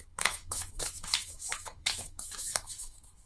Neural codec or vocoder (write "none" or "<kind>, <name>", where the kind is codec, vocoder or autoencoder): autoencoder, DAC-VAE